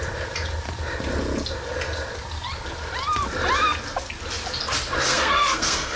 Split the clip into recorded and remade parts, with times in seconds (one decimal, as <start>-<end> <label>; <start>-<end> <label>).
0.0-5.1 recorded; 5.1-6.0 remade